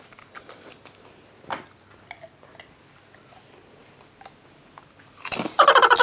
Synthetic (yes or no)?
no